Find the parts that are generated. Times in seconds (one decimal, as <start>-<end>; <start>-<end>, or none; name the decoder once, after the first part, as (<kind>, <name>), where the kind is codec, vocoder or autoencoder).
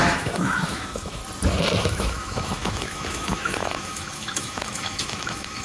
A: 0.0-1.2 (autoencoder, DAC-VAE); 1.8-5.6